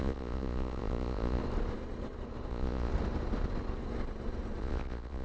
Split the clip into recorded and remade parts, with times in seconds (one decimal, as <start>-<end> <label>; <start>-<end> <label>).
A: 0.0-1.4 remade; 1.4-2.5 recorded; 2.5-2.9 remade; 2.9-4.6 recorded; 4.6-5.2 remade